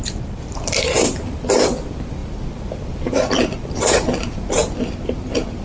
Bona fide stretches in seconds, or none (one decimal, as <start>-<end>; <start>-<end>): none